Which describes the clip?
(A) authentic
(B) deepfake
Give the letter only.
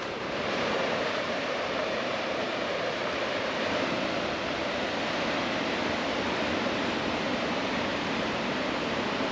B